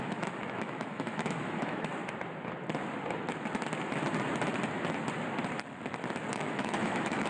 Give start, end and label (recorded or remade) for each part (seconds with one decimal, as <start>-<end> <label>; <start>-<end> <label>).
0.0-1.9 remade; 1.9-6.3 recorded; 6.3-7.3 remade